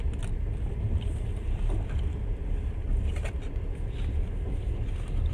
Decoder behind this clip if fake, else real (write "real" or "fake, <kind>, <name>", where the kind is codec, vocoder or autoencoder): real